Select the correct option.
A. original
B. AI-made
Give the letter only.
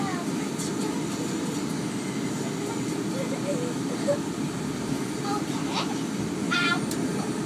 A